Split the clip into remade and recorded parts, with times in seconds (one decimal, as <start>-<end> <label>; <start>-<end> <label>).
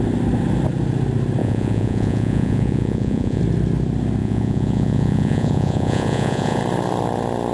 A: 0.0-1.4 recorded; 1.4-3.4 remade; 3.4-4.2 recorded; 4.2-6.6 remade; 6.6-7.5 recorded